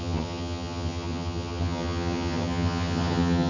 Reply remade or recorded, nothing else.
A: remade